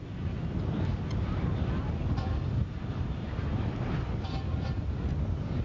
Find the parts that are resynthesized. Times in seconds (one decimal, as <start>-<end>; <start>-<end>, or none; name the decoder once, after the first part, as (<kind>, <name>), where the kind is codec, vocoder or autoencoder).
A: 0.0-2.9 (vocoder, BigVGAN v2); 4.2-5.6